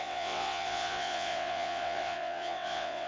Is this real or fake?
fake